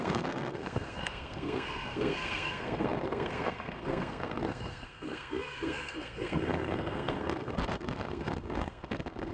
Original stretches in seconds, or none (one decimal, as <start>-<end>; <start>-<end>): none